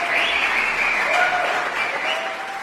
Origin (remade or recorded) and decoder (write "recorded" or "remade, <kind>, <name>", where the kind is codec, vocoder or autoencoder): recorded